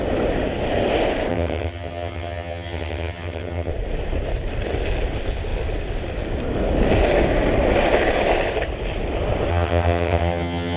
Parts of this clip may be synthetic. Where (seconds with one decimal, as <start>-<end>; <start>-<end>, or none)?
1.3-3.7; 9.5-10.8